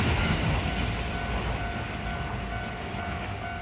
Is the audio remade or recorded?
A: recorded